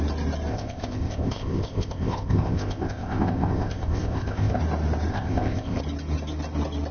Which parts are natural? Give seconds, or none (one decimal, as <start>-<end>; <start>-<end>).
0.0-0.5; 4.6-5.1; 5.8-6.9